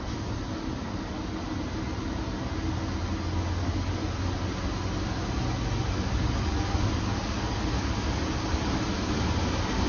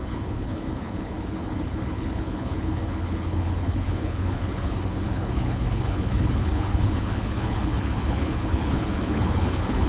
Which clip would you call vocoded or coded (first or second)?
second